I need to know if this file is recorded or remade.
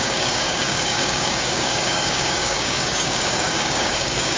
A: remade